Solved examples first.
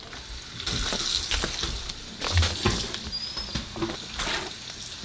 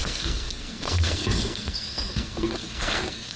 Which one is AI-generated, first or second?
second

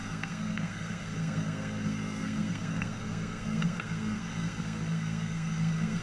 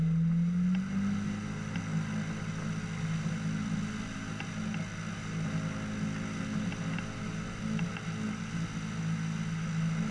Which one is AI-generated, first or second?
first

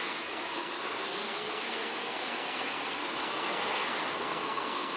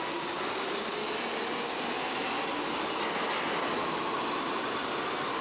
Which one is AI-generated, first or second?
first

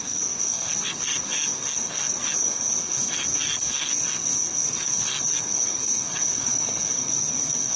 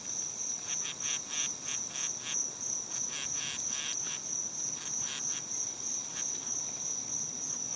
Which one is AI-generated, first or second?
first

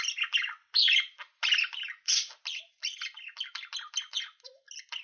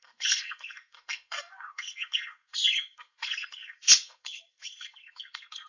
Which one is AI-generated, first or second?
second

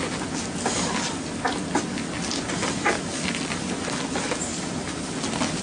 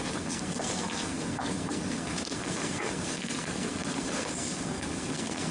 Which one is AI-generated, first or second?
second